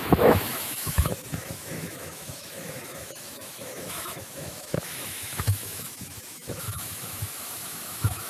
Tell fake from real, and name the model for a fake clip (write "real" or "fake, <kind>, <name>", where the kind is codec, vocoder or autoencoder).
fake, autoencoder, DAC-VAE